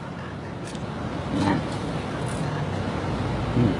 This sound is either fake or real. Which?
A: real